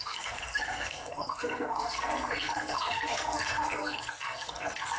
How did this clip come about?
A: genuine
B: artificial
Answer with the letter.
B